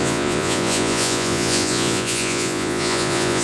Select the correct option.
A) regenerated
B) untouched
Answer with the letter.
A